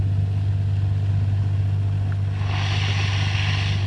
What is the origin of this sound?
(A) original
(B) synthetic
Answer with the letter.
A